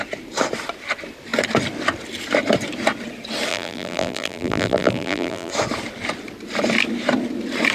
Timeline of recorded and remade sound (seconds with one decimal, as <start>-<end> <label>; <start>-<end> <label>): 0.0-3.5 recorded; 3.5-5.5 remade; 5.5-7.7 recorded